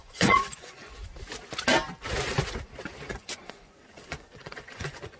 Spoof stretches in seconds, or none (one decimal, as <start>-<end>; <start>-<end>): 0.0-1.0; 3.1-5.2